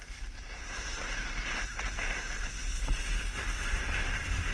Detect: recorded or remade recorded